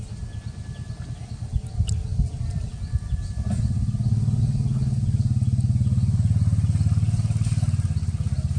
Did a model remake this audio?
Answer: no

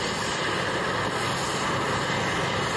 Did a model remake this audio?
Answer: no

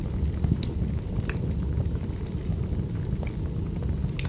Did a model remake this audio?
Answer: no